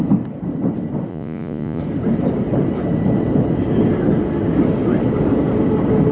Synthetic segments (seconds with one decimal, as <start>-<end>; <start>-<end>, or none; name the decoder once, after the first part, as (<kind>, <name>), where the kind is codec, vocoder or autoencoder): 1.1-1.8 (vocoder, Vocos)